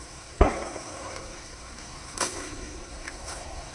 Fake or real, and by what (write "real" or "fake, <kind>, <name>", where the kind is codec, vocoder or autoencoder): fake, codec, SNAC